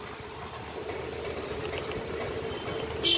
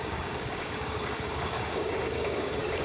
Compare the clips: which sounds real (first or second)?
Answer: first